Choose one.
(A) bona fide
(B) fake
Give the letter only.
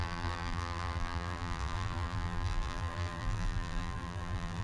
B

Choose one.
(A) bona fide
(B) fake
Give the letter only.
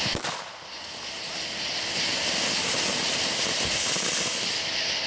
A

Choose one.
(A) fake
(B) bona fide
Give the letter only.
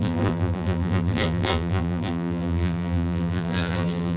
A